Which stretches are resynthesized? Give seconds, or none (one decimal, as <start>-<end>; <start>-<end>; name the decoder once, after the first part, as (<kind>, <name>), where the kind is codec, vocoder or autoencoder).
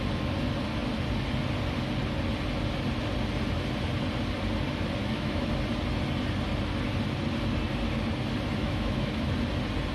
5.0-5.5 (autoencoder, DAC-VAE); 8.6-9.3